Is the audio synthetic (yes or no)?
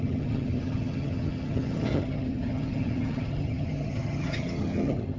yes